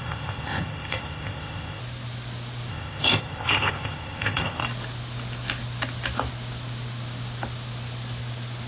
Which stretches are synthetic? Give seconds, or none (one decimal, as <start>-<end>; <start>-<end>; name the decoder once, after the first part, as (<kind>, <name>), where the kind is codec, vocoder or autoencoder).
0.0-1.8 (codec, ZipCodec); 2.7-4.6